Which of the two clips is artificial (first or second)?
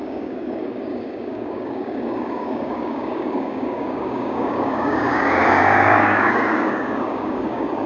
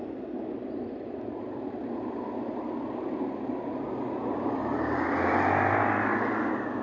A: first